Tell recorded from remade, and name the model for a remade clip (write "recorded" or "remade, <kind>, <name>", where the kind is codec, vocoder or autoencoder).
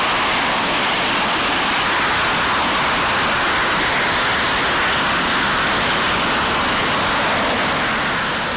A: recorded